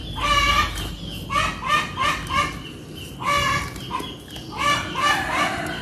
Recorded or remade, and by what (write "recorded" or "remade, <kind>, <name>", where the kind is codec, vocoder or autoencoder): recorded